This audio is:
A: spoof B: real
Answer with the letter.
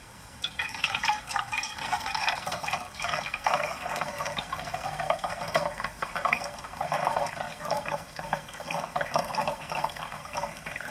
A